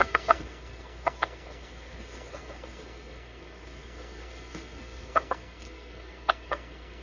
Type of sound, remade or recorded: remade